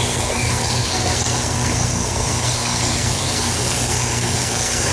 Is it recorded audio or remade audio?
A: remade